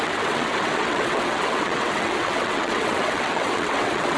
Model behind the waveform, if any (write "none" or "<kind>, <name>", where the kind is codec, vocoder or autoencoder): vocoder, WaveNeXt